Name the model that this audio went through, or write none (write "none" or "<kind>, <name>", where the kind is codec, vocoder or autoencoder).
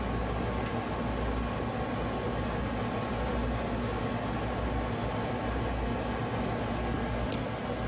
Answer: none